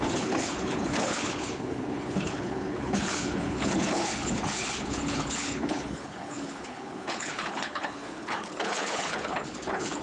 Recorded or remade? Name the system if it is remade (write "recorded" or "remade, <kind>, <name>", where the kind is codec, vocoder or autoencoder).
remade, codec, HILCodec